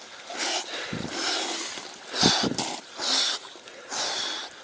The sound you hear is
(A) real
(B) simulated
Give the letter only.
A